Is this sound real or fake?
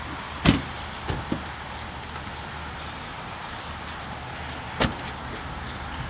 real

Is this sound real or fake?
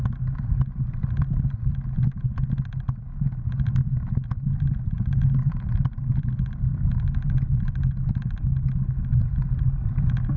real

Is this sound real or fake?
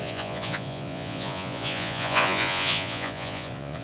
fake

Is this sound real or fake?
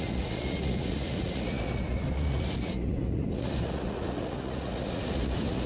fake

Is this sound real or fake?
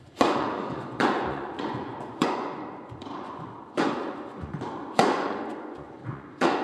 fake